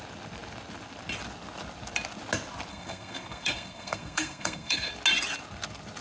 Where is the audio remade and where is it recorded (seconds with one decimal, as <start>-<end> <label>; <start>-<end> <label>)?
0.0-2.7 recorded; 2.7-4.9 remade; 4.9-6.0 recorded